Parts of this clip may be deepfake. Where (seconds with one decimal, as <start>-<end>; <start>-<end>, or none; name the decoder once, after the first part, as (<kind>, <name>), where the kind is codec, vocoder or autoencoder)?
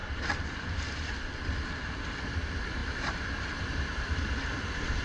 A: 0.0-1.1 (vocoder, BigVGAN v2); 2.8-4.2